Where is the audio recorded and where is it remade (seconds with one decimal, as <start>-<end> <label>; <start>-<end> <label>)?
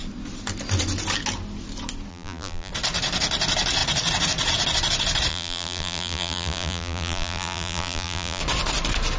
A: 0.0-2.1 recorded; 2.1-2.7 remade; 2.7-5.3 recorded; 5.3-8.4 remade; 8.4-9.2 recorded